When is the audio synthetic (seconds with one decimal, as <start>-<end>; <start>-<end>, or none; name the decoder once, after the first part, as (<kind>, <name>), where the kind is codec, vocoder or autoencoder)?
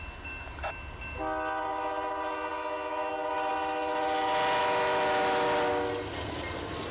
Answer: none